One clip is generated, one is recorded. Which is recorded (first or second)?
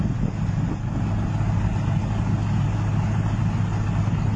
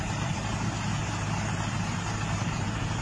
first